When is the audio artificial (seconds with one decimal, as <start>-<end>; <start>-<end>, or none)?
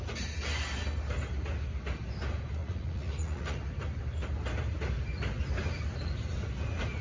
2.6-3.6